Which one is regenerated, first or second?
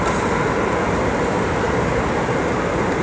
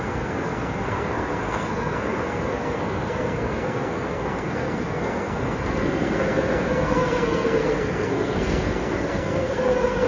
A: second